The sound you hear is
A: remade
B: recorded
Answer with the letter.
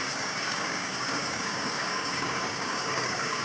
A